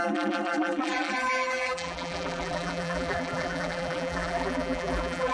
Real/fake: fake